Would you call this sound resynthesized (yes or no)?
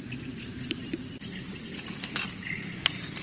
yes